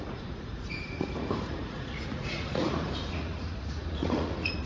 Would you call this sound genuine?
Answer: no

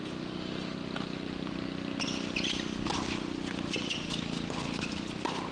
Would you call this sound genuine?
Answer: yes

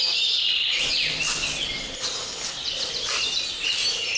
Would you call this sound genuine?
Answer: yes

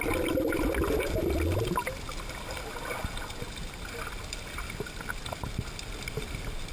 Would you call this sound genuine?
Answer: yes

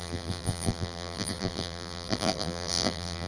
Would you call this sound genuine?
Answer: no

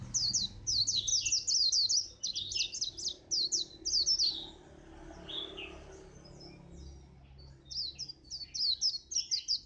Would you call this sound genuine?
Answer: yes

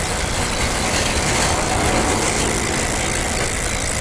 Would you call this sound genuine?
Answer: yes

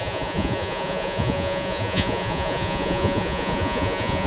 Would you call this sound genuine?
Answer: no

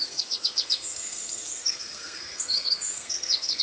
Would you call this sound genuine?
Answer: no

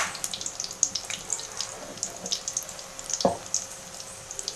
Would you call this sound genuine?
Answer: yes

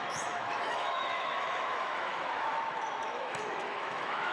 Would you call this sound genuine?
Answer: no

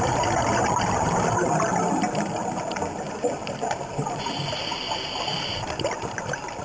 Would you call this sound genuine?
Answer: yes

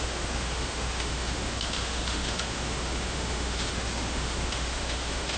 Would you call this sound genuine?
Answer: no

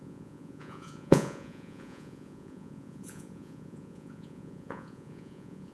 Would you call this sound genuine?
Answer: no